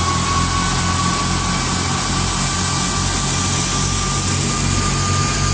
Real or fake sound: real